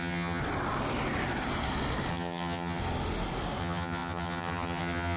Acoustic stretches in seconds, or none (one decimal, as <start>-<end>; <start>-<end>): 0.4-2.1; 2.8-3.6